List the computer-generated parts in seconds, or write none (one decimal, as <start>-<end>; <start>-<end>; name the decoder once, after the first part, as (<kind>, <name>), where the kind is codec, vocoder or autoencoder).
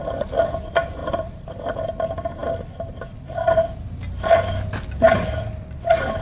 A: 1.0-1.6 (vocoder, BigVGAN v2)